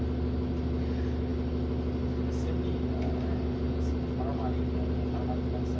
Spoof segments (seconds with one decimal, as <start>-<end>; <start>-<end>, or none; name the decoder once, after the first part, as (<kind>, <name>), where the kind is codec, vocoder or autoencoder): none